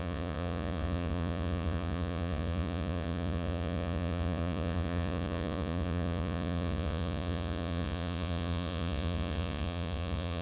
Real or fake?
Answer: fake